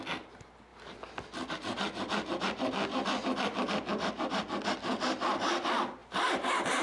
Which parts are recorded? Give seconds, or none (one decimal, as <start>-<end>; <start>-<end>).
0.0-6.8